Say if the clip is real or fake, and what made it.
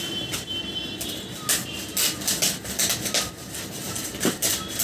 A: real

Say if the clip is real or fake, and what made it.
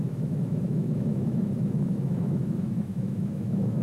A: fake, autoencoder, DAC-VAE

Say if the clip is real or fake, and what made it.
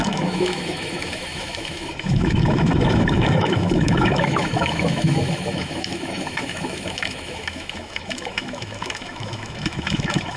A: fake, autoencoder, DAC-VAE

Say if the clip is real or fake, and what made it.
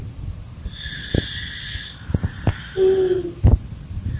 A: real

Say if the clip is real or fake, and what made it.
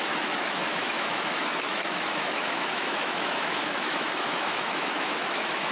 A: fake, autoencoder, DAC-VAE